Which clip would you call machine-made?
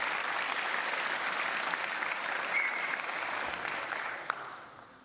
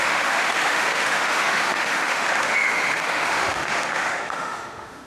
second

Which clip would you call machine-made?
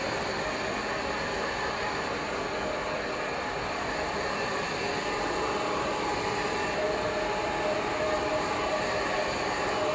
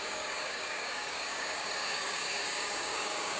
second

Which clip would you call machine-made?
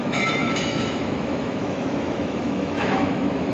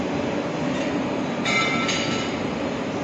first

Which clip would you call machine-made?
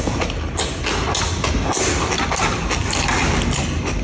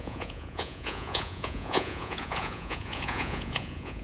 second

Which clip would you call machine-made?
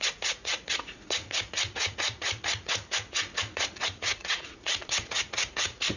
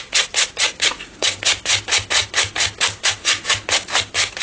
first